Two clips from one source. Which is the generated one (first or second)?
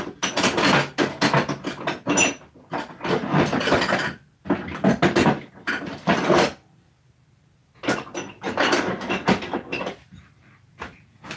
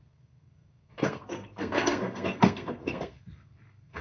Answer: second